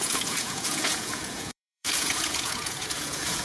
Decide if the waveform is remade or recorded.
remade